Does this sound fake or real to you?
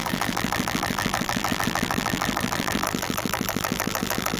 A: fake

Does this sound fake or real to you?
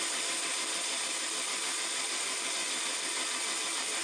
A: fake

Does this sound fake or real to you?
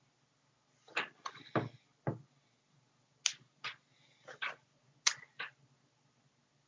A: real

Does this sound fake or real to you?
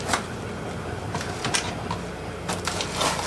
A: real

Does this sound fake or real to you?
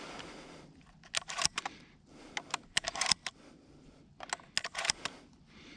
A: real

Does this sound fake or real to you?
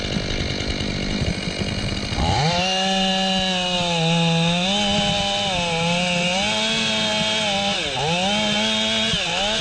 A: real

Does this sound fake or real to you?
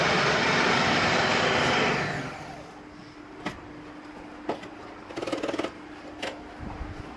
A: real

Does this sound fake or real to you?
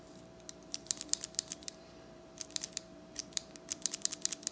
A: fake